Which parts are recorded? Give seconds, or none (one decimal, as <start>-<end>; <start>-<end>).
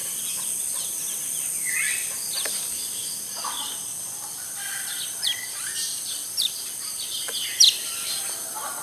0.0-3.0; 8.2-8.8